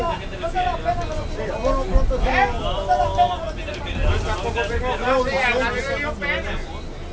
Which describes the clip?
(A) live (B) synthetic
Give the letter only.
A